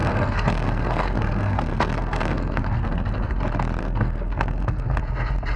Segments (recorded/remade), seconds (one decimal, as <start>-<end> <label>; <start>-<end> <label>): 0.0-3.4 remade; 3.4-3.8 recorded; 3.8-5.0 remade; 5.0-5.6 recorded